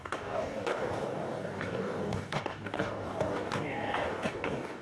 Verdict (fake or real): fake